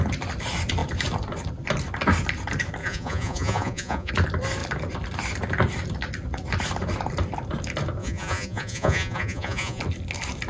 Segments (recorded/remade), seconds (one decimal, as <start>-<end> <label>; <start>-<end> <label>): 0.0-2.8 recorded; 2.8-4.1 remade; 4.1-8.0 recorded; 8.0-9.8 remade; 9.8-10.5 recorded